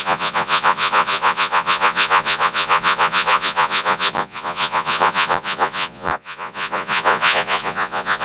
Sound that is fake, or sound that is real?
fake